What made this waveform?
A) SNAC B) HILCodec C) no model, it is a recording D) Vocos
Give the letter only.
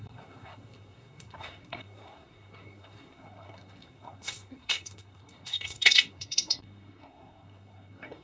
A